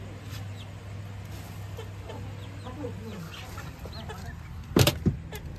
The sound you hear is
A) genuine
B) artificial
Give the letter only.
A